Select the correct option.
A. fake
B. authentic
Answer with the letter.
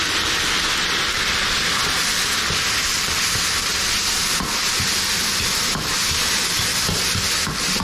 B